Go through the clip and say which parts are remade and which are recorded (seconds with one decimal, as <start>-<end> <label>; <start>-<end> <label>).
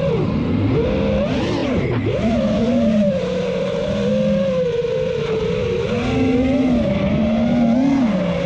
0.0-1.6 recorded; 1.6-4.1 remade; 4.1-4.7 recorded; 4.7-5.9 remade; 5.9-8.5 recorded